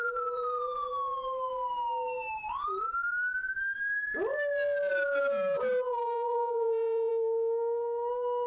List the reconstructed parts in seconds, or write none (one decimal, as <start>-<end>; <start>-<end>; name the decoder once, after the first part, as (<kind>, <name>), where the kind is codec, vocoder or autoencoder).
0.0-0.9 (vocoder, Vocos); 4.9-7.1